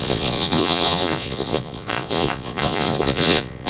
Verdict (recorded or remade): remade